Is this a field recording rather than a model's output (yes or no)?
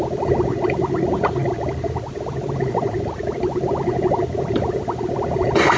yes